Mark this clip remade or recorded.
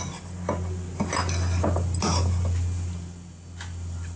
recorded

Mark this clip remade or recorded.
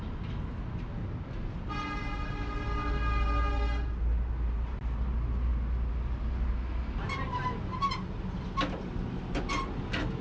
recorded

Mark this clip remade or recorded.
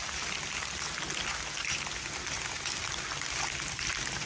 recorded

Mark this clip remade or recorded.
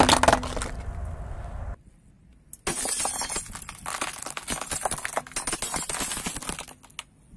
recorded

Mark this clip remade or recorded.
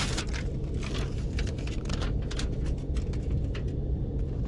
recorded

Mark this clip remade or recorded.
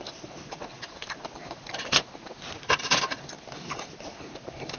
recorded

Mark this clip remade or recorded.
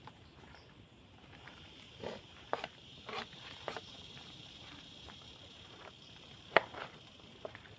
remade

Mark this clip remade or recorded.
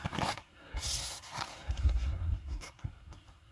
remade